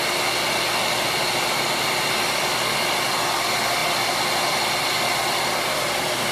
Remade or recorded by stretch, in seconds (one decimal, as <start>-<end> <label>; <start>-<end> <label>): 0.0-6.3 recorded